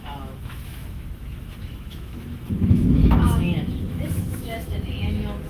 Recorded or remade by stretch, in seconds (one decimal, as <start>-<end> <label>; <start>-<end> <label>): 0.0-5.5 remade